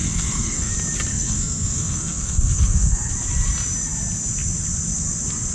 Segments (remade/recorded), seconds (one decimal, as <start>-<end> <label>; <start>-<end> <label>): 0.0-0.7 remade; 0.7-1.1 recorded; 1.1-3.1 remade; 3.1-5.5 recorded